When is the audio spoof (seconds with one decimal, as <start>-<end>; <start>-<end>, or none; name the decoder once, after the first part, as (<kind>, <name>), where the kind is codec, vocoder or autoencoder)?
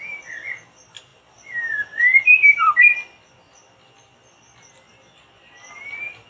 none